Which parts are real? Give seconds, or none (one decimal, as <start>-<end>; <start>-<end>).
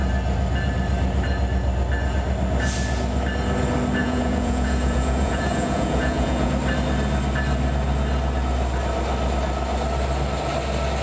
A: 0.0-4.0; 6.5-11.0